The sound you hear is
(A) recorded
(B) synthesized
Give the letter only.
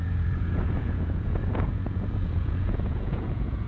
B